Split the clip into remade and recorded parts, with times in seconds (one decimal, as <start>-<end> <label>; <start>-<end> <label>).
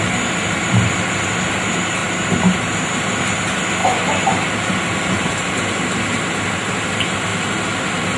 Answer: 0.0-2.0 recorded; 2.0-2.9 remade; 2.9-8.2 recorded